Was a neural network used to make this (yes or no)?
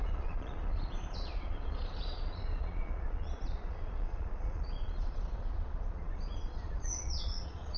yes